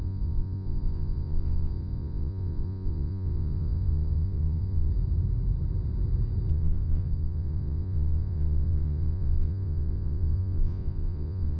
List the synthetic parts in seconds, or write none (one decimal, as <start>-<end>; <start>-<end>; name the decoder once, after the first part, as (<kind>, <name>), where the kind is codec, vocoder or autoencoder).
0.0-4.9 (vocoder, Vocos); 6.5-11.6